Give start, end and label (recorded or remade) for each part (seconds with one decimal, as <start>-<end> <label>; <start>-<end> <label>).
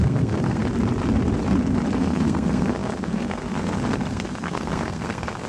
0.0-0.6 remade; 0.6-2.0 recorded; 2.0-5.5 remade